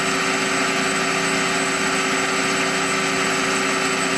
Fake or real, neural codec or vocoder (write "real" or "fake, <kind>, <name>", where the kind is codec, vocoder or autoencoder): real